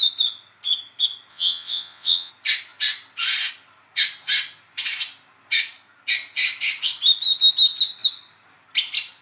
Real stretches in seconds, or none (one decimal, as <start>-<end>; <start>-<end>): 0.0-1.3; 2.3-9.2